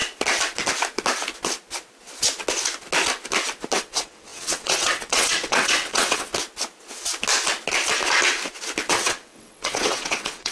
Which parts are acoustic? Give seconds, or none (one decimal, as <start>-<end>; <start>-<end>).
0.0-3.8; 6.3-8.9